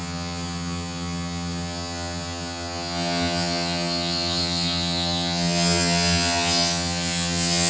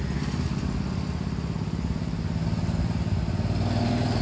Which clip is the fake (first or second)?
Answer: first